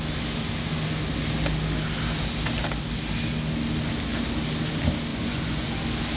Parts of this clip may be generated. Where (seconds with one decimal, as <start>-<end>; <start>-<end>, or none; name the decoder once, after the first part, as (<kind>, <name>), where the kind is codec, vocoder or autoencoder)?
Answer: 5.1-5.7 (vocoder, Vocos)